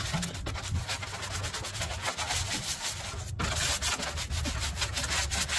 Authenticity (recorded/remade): recorded